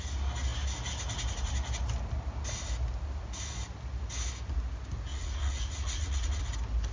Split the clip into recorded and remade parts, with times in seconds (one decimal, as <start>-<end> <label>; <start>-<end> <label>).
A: 0.0-5.1 recorded; 5.1-6.4 remade; 6.4-6.9 recorded